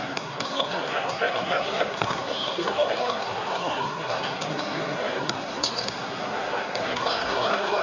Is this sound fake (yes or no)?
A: yes